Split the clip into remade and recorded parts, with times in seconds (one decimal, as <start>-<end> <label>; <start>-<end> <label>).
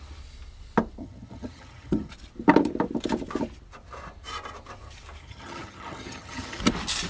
0.0-1.0 recorded; 1.0-2.1 remade; 2.1-5.2 recorded; 5.2-6.6 remade; 6.6-7.1 recorded